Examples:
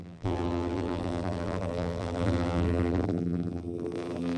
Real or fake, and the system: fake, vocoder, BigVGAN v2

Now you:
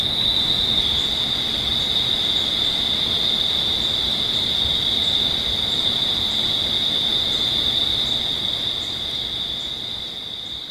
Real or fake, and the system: real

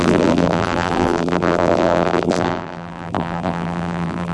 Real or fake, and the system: fake, vocoder, BigVGAN v2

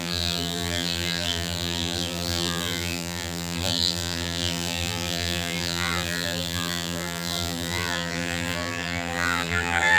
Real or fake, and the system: fake, vocoder, BigVGAN v2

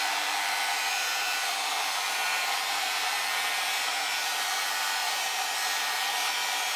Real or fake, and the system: fake, vocoder, BigVGAN v2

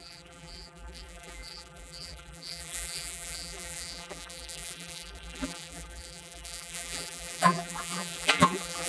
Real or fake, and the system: fake, vocoder, BigVGAN v2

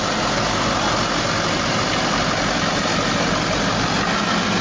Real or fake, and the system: real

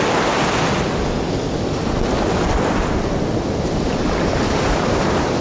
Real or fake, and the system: real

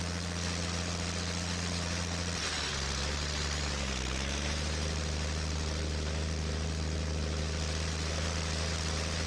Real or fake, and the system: real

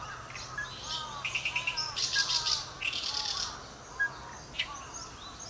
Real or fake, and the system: real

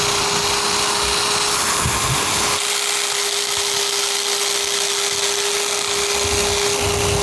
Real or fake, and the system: real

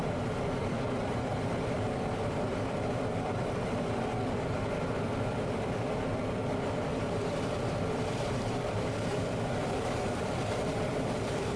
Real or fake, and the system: fake, vocoder, BigVGAN v2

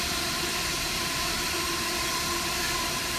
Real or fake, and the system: fake, vocoder, BigVGAN v2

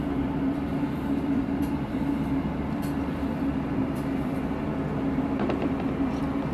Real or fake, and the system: fake, vocoder, BigVGAN v2